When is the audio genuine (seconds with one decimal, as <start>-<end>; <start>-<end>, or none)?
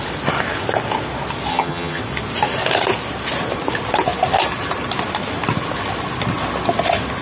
0.0-1.5; 2.0-7.2